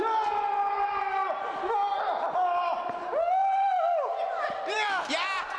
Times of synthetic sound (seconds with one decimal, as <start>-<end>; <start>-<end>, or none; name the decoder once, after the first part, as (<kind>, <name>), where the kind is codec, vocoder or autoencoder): 3.4-5.0 (vocoder, BigVGAN v2)